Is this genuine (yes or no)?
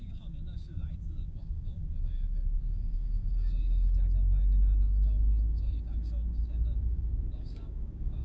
no